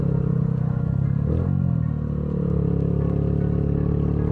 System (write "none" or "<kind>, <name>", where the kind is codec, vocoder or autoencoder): none